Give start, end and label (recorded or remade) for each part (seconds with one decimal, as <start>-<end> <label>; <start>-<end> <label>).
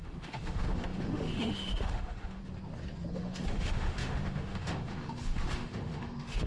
0.0-2.4 remade; 2.4-3.1 recorded; 3.1-6.5 remade